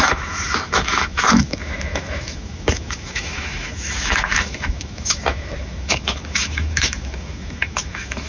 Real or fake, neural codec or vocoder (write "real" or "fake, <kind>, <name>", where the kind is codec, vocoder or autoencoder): fake, autoencoder, DAC-VAE